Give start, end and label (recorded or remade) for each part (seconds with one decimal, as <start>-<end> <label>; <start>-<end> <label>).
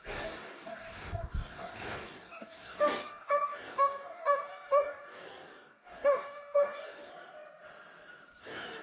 0.0-7.1 remade; 7.1-8.4 recorded; 8.4-8.8 remade